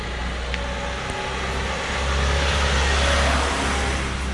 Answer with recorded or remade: recorded